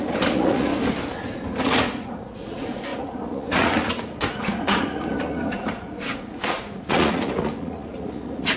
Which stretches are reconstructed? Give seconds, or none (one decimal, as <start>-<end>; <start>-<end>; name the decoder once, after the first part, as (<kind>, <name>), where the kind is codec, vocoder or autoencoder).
0.0-0.7 (vocoder, Vocos); 1.6-8.6